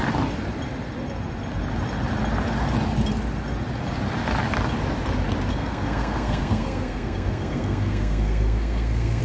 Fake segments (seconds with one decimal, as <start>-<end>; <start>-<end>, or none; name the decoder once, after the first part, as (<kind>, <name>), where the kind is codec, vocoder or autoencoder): 5.5-9.2 (codec, SNAC)